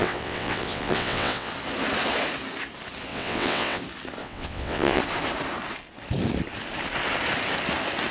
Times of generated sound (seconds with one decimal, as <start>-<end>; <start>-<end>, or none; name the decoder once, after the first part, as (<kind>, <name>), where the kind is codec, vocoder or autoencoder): 0.0-1.5 (vocoder, WaveNeXt); 3.1-3.8; 4.2-5.0